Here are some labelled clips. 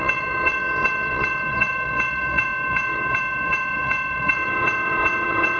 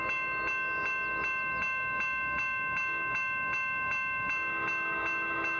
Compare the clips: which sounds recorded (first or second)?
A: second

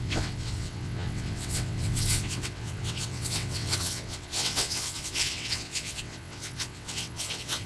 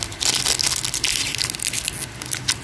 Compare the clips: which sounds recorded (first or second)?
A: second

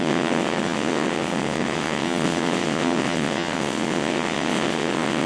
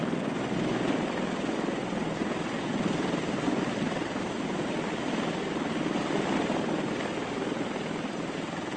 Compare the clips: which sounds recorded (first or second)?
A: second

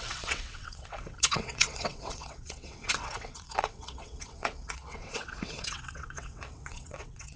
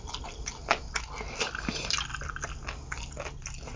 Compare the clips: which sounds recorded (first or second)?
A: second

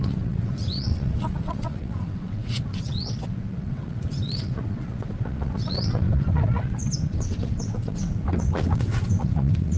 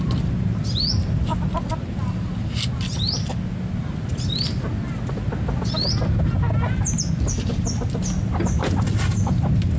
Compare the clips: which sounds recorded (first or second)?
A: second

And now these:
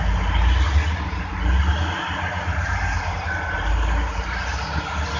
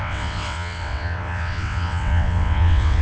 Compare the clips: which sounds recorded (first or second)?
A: first